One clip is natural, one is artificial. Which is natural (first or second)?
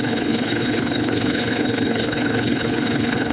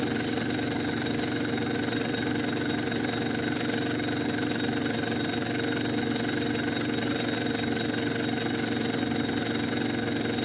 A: second